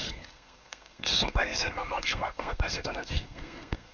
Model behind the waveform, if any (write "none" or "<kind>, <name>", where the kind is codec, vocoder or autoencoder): codec, SNAC